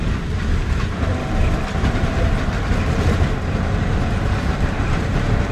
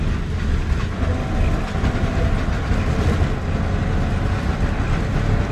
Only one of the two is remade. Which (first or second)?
first